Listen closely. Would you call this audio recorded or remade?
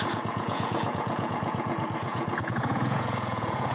remade